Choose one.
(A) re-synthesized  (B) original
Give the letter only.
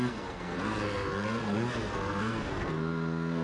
A